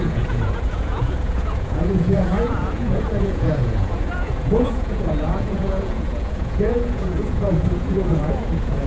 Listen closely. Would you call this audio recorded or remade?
remade